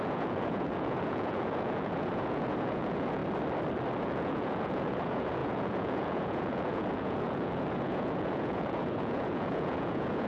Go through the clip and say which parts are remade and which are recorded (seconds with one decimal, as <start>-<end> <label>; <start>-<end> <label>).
0.0-3.2 remade; 3.2-4.0 recorded; 4.0-10.3 remade